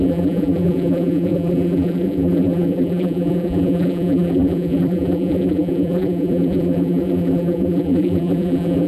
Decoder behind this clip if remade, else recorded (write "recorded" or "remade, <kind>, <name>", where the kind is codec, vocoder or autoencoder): remade, vocoder, BigVGAN v2